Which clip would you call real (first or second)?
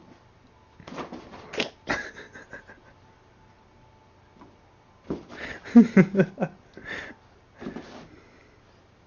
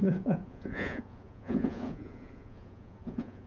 first